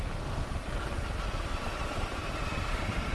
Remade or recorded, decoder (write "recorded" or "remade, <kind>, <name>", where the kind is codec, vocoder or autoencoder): recorded